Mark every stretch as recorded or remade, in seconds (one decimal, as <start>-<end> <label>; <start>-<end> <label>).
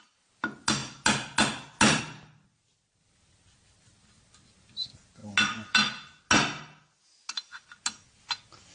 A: 0.0-8.7 recorded